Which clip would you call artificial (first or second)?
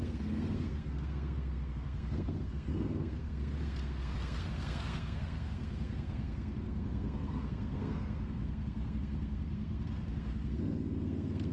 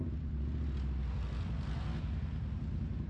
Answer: first